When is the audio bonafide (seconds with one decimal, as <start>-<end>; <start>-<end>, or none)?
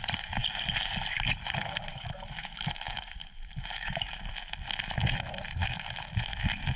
0.0-1.9; 4.1-5.6; 6.1-6.8